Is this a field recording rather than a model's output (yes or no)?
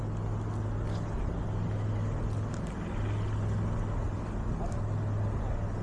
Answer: yes